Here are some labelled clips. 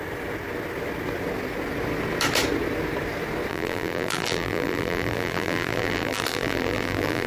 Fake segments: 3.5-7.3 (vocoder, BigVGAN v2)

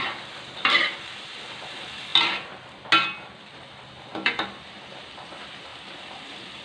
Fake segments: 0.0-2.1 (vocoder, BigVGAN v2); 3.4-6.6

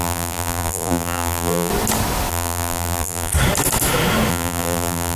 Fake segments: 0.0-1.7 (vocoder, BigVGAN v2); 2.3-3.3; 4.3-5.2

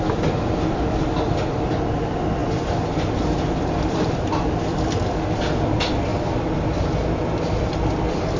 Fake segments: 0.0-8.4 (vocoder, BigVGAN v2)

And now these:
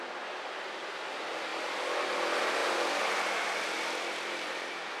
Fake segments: none

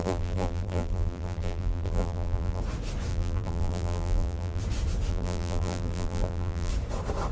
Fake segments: 0.0-2.6 (vocoder, BigVGAN v2); 3.1-4.6; 5.1-6.7

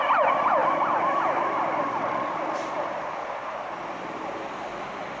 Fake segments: 0.0-5.2 (vocoder, BigVGAN v2)